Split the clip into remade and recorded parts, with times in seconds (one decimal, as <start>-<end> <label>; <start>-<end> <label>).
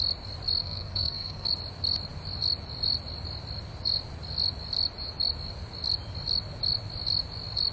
0.0-0.6 recorded; 0.6-1.5 remade; 1.5-7.7 recorded